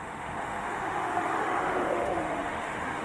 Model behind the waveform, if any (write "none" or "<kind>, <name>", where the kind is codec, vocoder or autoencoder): autoencoder, DAC-VAE